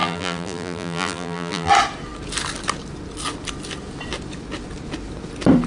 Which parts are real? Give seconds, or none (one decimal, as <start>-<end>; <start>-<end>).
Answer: 1.7-5.7